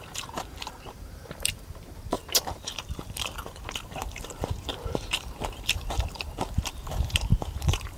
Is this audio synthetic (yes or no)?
yes